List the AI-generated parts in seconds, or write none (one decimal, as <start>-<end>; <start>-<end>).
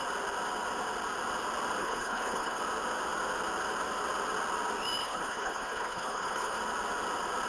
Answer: 1.8-2.6; 5.0-6.6